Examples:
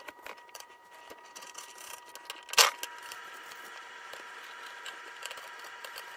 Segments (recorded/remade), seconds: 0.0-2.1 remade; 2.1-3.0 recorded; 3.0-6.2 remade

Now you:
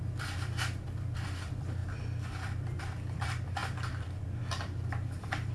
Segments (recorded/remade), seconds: 0.0-5.5 remade

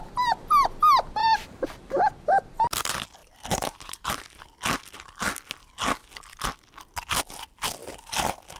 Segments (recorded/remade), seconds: 0.0-1.2 recorded; 1.2-2.0 remade; 2.0-3.2 recorded; 3.2-4.1 remade; 4.1-7.8 recorded; 7.8-8.6 remade

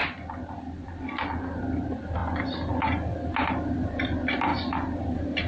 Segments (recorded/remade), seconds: 0.0-2.2 remade; 2.2-3.5 recorded; 3.5-4.5 remade; 4.5-5.0 recorded; 5.0-5.5 remade

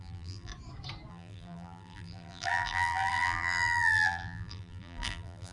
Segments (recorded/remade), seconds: 0.0-0.5 remade; 0.5-1.1 recorded; 1.1-5.5 remade

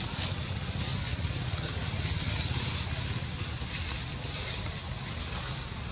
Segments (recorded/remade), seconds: 0.0-5.9 recorded

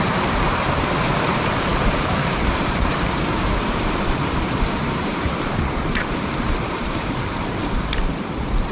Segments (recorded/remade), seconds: 0.0-8.7 remade

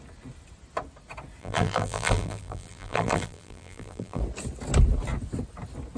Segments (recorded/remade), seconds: 0.0-1.4 recorded; 1.4-4.2 remade; 4.2-6.0 recorded